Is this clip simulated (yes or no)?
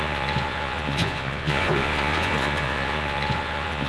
yes